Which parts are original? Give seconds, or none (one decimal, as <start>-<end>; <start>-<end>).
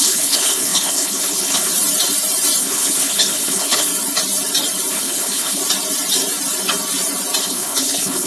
1.7-2.6; 3.9-4.9; 5.6-7.4